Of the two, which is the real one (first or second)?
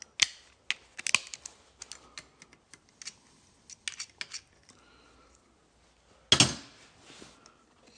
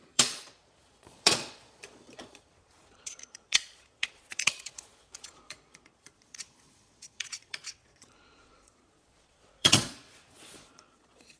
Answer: first